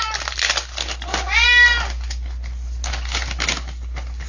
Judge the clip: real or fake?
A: real